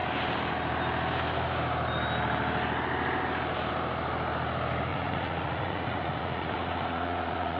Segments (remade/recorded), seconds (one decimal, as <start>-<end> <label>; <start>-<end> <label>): 0.0-4.9 recorded; 4.9-7.6 remade